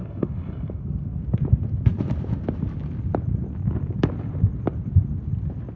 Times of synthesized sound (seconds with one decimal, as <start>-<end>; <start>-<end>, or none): 0.0-1.2